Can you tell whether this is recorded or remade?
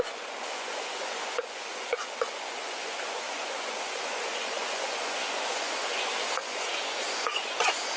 remade